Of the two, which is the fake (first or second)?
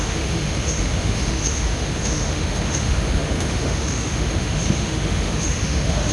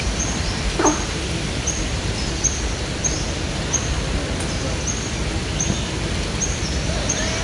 first